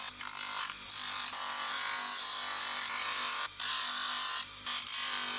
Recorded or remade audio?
recorded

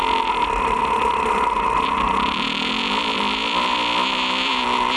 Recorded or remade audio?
recorded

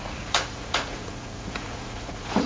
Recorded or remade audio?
remade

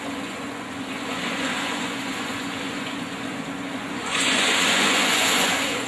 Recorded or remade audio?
remade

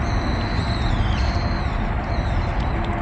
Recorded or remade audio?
recorded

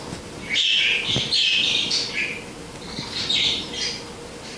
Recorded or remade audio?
recorded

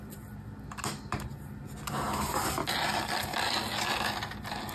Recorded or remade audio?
recorded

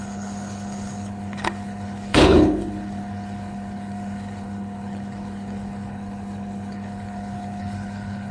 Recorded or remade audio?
remade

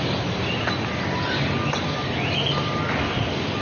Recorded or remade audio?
recorded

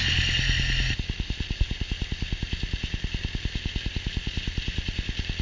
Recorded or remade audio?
remade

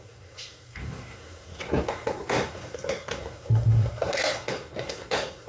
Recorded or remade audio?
remade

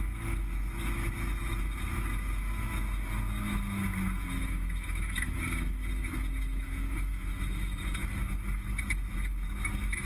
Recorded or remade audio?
remade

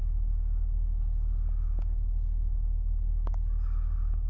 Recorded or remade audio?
recorded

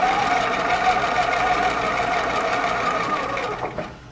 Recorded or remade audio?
recorded